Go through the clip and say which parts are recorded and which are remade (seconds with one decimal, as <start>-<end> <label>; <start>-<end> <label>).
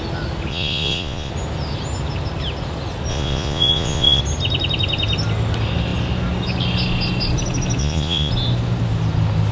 0.0-0.5 recorded; 0.5-1.3 remade; 1.3-3.1 recorded; 3.1-4.2 remade; 4.2-7.8 recorded; 7.8-8.3 remade; 8.3-9.5 recorded